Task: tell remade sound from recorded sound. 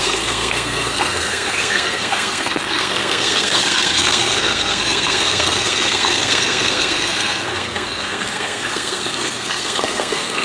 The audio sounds remade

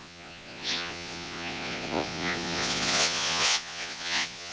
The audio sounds remade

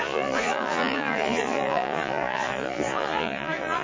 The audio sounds remade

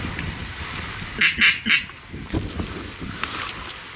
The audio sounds recorded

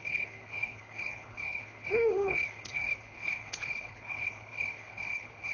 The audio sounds remade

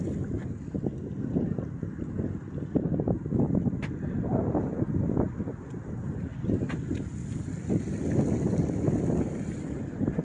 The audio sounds recorded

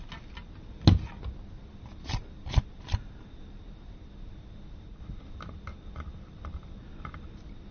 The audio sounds recorded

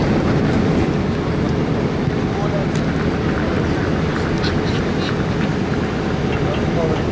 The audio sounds recorded